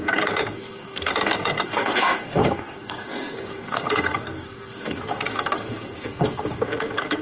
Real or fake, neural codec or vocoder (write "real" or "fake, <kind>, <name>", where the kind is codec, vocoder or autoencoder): fake, codec, SNAC